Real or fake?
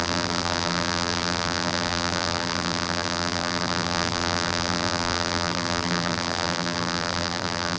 fake